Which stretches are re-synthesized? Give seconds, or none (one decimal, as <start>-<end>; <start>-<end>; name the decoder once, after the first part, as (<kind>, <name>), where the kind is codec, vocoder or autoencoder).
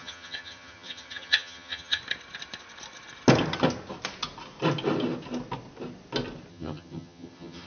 0.0-2.0 (vocoder, HiFi-GAN); 6.5-7.7